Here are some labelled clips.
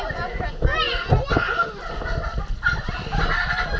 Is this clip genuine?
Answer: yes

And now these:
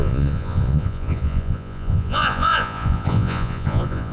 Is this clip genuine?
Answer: no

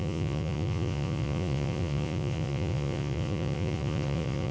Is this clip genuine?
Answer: no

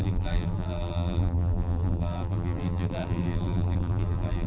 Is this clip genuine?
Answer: no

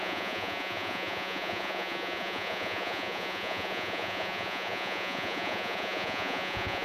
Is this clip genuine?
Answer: no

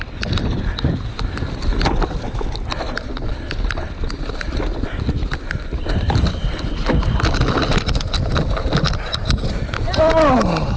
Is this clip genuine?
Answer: yes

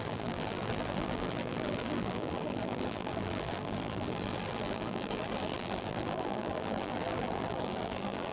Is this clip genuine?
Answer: no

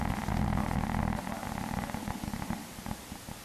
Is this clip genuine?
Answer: yes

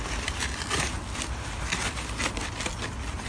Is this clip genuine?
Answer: yes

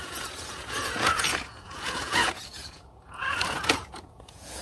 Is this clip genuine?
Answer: no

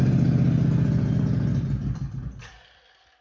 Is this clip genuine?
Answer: yes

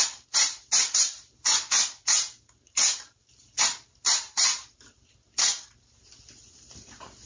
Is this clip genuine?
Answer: no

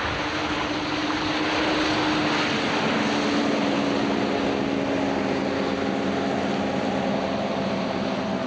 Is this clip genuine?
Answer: yes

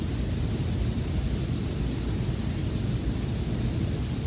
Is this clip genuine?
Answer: yes